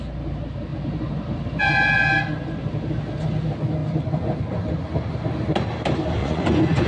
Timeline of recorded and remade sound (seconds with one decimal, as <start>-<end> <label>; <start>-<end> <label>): 0.0-6.2 recorded; 6.2-6.9 remade